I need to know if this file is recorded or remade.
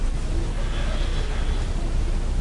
recorded